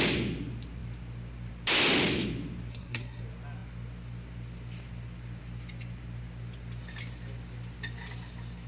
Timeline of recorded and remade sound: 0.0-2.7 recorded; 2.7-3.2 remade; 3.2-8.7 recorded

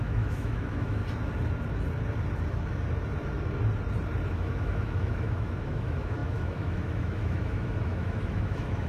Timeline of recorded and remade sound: 0.0-1.0 remade; 1.0-4.3 recorded; 4.3-8.9 remade

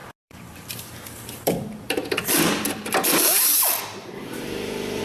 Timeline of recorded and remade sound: 0.0-2.3 remade; 2.3-4.0 recorded; 4.0-5.0 remade

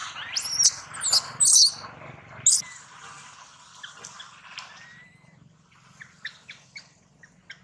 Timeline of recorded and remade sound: 0.0-7.6 recorded

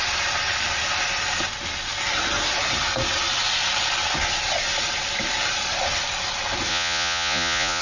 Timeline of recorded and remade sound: 0.0-6.7 recorded; 6.7-7.8 remade

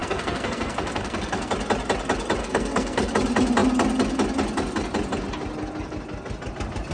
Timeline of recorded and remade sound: 0.0-1.5 remade; 1.5-2.4 recorded; 2.4-3.1 remade; 3.1-6.9 recorded

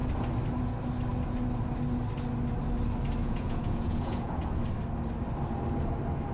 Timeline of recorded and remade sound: 0.0-3.2 recorded; 3.2-4.6 remade; 4.6-6.3 recorded